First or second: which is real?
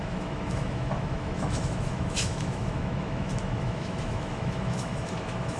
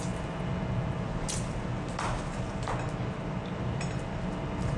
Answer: second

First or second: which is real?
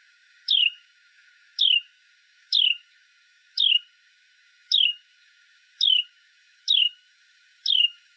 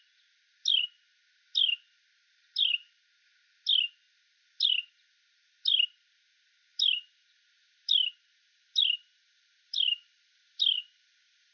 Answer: second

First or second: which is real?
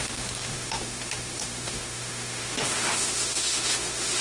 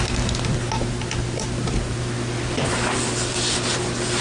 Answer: second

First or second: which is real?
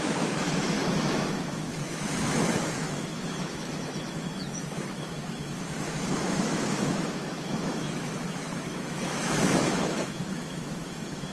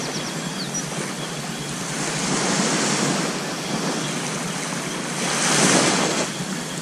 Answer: second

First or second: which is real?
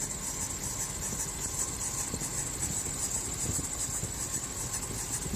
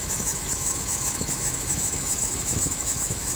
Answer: first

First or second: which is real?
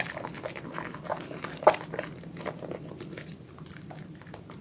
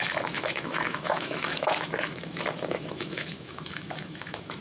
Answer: first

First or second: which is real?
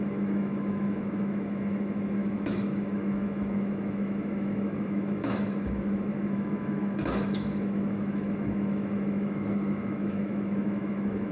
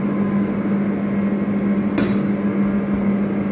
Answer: second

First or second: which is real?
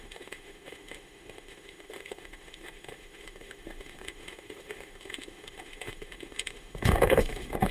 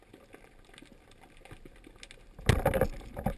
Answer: second